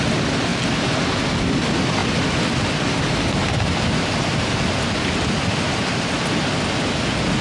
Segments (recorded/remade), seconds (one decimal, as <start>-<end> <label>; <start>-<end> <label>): 0.0-7.4 recorded